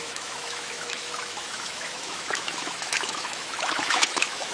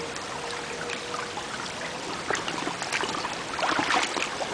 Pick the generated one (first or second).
first